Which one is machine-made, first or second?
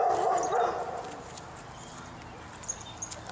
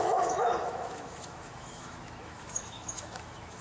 second